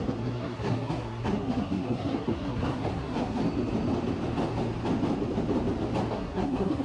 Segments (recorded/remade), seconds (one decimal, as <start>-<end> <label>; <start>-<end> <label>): 0.0-3.4 remade; 3.4-6.1 recorded; 6.1-6.8 remade